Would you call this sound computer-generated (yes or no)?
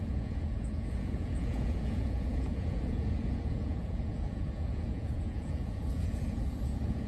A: yes